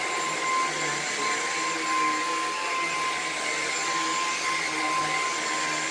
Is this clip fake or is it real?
real